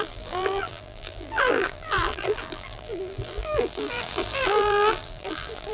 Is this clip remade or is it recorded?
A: remade